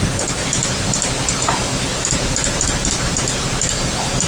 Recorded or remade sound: recorded